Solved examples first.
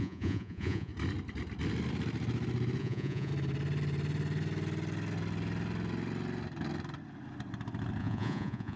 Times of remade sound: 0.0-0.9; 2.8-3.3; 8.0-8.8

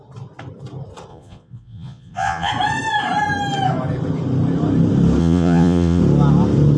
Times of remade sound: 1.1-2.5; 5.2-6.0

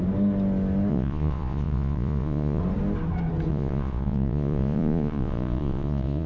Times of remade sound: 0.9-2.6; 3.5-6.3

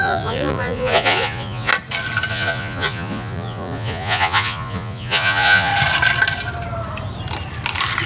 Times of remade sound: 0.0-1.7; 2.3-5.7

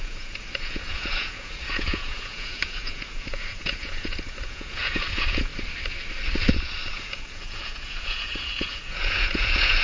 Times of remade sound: 0.0-5.5; 6.9-9.8